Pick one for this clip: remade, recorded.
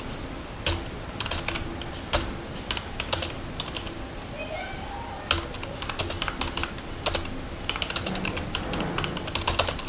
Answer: recorded